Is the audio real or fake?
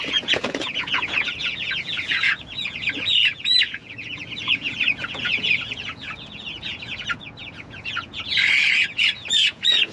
fake